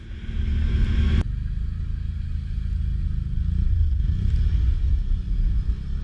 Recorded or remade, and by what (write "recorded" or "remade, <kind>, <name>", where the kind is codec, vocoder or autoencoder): recorded